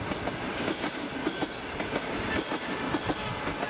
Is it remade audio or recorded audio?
recorded